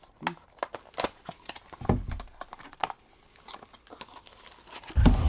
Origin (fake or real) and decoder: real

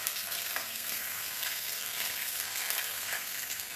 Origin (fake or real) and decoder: fake, codec, SNAC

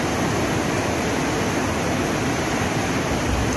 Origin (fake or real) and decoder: real